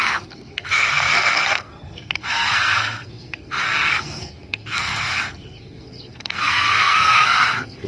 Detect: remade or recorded remade